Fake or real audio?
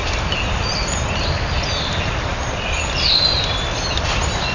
real